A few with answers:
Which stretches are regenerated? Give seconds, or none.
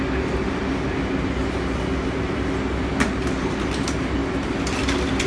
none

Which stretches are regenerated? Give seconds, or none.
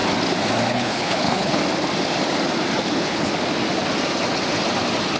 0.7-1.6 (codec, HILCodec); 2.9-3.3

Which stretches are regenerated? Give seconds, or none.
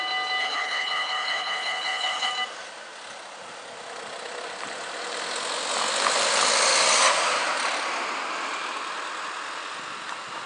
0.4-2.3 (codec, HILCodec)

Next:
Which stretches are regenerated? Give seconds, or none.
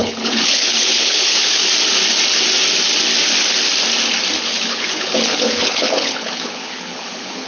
0.0-1.6 (codec, HILCodec); 4.4-7.5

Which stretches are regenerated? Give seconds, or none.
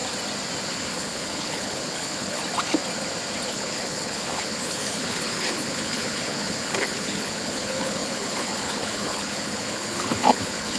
0.7-2.4 (codec, HILCodec); 3.5-10.8